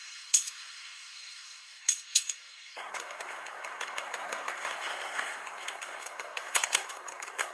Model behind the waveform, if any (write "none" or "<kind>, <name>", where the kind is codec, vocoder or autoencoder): codec, SNAC